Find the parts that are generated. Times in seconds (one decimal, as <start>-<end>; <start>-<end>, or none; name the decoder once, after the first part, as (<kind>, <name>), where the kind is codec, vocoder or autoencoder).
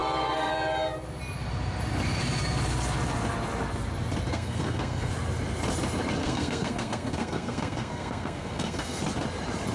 0.0-0.5 (codec, SNAC); 4.3-5.1; 6.2-9.0